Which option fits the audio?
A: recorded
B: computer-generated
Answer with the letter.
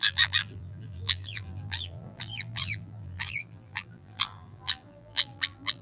B